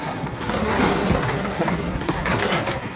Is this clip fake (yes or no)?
yes